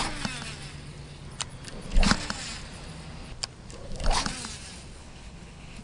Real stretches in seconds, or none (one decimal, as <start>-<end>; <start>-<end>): 0.0-5.0